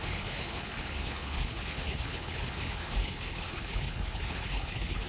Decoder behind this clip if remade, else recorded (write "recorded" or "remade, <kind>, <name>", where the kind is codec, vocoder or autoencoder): remade, codec, HILCodec